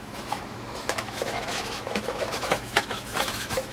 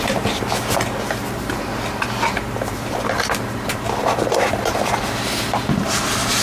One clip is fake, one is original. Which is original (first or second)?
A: second